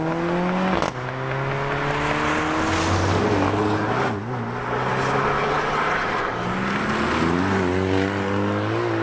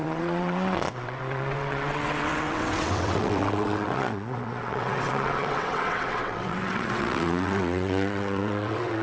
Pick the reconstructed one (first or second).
second